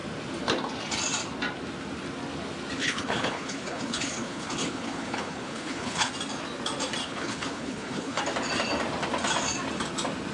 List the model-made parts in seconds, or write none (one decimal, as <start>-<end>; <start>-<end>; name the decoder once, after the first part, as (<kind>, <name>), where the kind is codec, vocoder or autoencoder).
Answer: 2.8-6.1 (codec, HILCodec); 7.0-8.2